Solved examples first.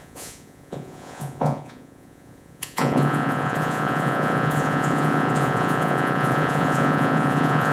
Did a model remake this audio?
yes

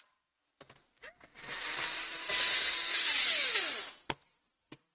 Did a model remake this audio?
no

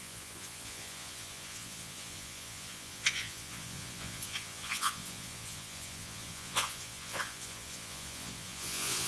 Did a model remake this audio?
yes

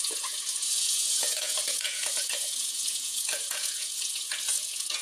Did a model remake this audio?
yes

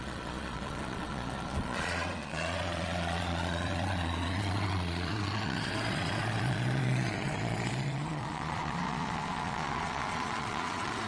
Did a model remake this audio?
yes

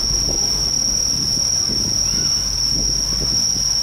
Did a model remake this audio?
no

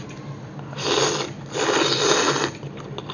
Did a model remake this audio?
no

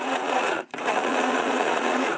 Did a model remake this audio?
yes